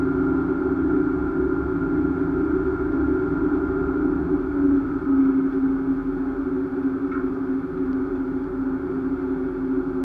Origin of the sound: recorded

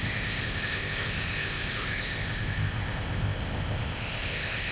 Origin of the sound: remade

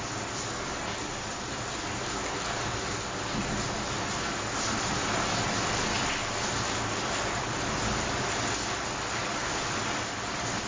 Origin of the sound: recorded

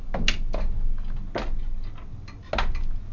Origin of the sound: recorded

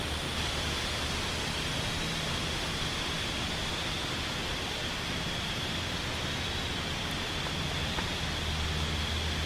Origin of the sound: recorded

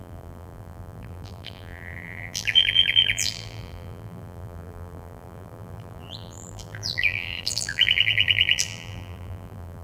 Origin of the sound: remade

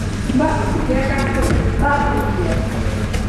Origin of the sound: recorded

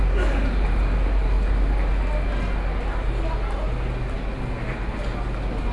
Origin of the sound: recorded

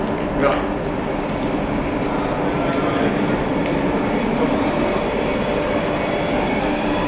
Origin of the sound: recorded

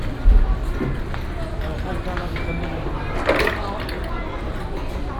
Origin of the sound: recorded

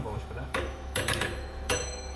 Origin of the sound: remade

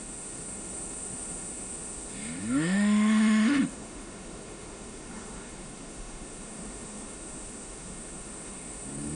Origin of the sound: remade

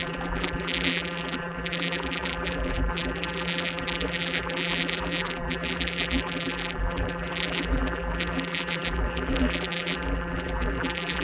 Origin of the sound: remade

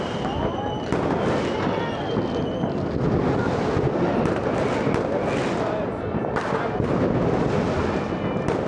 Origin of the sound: recorded